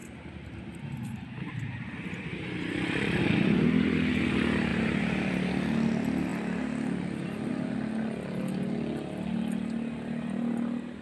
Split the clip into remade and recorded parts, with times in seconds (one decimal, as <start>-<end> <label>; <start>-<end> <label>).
0.0-3.2 remade; 3.2-4.7 recorded; 4.7-5.5 remade; 5.5-11.0 recorded